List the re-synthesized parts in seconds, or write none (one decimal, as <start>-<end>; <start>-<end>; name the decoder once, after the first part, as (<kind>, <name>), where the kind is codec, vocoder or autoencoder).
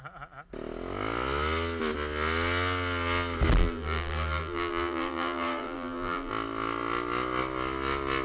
3.6-6.3 (vocoder, BigVGAN v2)